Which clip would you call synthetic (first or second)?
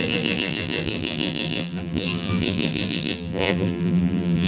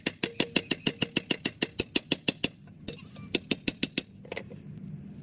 first